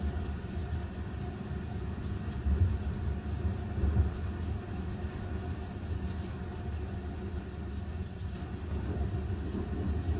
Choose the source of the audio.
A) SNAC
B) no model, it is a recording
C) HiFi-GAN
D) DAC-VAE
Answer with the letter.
B